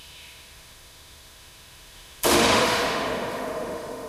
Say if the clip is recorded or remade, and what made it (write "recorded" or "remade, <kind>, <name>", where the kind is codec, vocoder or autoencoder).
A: remade, autoencoder, DAC-VAE